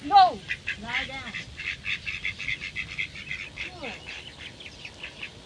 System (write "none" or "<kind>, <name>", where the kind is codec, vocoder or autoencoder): none